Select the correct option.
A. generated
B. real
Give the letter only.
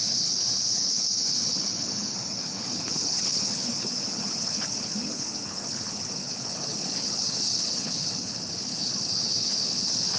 A